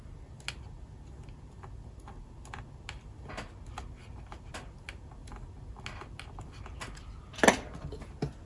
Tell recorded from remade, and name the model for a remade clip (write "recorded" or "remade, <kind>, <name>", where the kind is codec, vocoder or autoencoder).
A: recorded